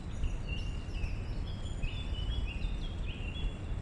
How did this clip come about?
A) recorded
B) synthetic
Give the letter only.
A